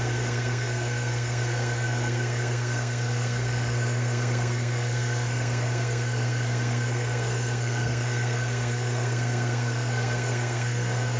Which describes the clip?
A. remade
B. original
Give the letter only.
A